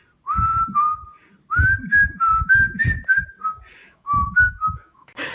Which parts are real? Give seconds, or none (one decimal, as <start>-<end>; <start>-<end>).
0.0-3.8